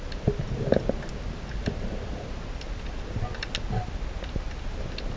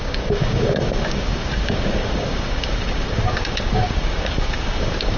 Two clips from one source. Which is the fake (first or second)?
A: second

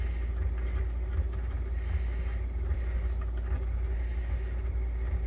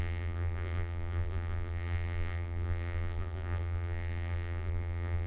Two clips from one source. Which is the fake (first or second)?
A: second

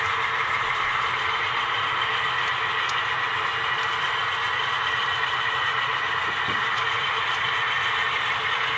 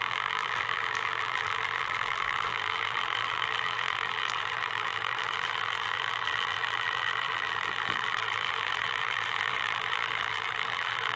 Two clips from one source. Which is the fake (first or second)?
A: second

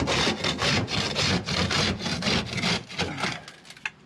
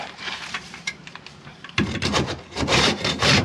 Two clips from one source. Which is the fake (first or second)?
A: second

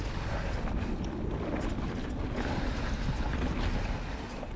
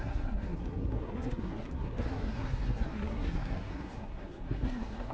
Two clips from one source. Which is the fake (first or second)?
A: second